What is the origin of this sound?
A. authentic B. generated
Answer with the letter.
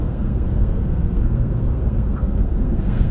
B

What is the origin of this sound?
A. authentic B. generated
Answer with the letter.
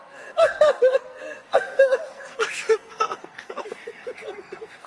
B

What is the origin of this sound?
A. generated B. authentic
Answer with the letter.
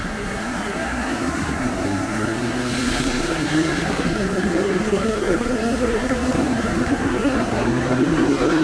A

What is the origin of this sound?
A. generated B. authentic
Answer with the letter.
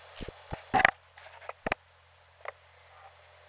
B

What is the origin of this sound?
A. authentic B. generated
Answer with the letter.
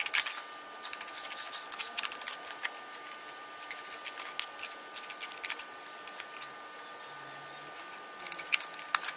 A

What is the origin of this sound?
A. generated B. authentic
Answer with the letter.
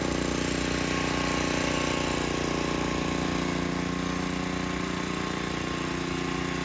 B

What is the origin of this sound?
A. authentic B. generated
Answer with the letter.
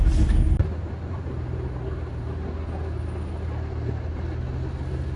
A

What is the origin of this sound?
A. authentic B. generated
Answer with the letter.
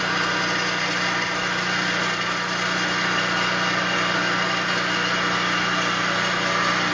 A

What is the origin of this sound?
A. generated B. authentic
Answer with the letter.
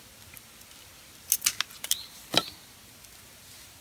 B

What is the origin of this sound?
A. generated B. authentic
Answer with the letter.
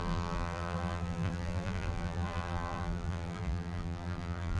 A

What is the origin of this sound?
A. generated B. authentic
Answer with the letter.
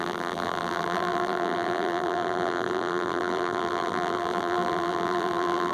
A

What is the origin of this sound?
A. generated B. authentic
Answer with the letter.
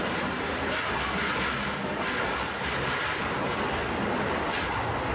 B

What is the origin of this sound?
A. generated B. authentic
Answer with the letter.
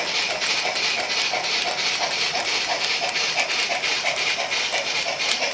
B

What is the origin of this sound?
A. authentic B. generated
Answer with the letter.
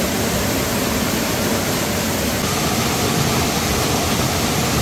A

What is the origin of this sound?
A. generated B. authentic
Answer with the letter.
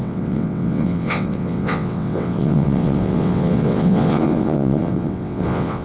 A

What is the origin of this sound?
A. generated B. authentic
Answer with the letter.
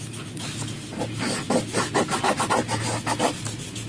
B